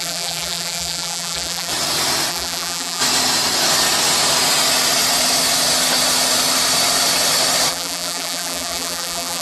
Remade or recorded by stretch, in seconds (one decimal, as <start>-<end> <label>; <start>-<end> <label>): 0.0-1.7 remade; 1.7-2.3 recorded; 2.3-3.0 remade; 3.0-7.7 recorded; 7.7-9.4 remade